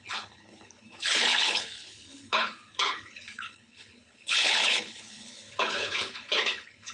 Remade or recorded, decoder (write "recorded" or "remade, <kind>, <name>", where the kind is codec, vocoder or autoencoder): remade, codec, HILCodec